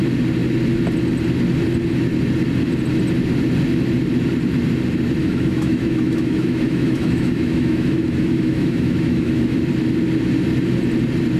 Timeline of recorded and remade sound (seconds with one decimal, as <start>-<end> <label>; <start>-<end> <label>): 0.0-5.2 recorded; 5.2-9.6 remade; 9.6-11.4 recorded